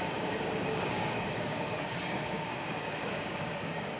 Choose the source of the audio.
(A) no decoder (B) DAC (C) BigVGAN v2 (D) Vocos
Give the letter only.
B